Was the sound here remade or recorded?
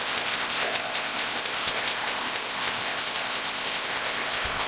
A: remade